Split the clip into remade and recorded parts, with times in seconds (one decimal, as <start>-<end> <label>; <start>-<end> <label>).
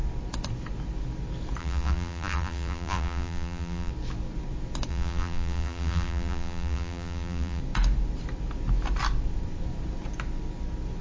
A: 0.0-1.6 recorded; 1.6-3.9 remade; 3.9-4.9 recorded; 4.9-7.6 remade; 7.6-11.0 recorded